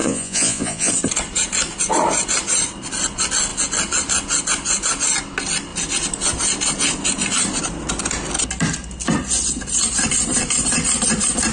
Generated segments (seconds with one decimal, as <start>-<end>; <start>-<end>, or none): 0.0-0.9